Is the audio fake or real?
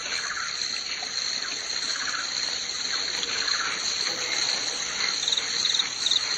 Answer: real